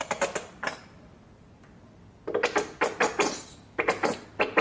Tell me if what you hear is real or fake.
real